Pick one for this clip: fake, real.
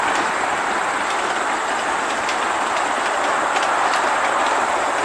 fake